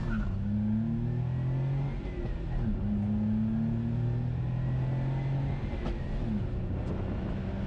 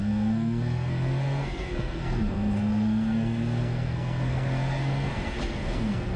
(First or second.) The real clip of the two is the first